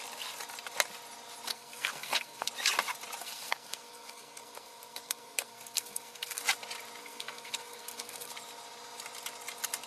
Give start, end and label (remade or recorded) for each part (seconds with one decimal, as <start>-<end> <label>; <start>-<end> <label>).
0.0-1.5 recorded; 1.5-2.5 remade; 2.5-3.2 recorded; 3.2-6.4 remade; 6.4-7.0 recorded; 7.0-8.3 remade; 8.3-9.9 recorded